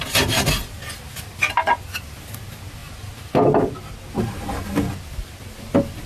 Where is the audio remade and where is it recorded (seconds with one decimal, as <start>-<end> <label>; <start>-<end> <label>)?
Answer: 0.0-6.1 recorded